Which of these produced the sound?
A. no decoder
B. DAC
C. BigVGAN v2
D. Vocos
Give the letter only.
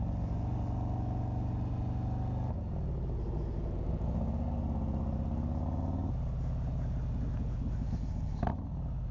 A